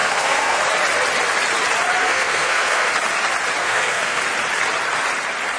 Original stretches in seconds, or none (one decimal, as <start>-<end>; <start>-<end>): 0.6-2.0; 2.9-3.6; 4.2-5.6